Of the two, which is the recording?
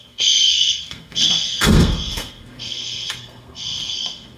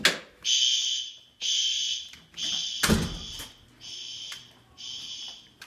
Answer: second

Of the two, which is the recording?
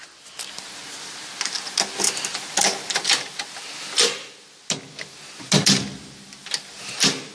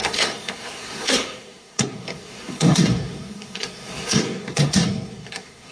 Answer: first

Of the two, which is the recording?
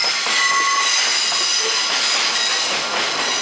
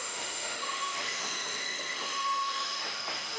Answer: first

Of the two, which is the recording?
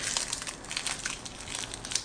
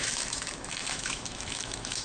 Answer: first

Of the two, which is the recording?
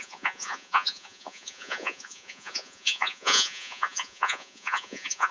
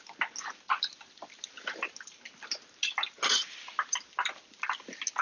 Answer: second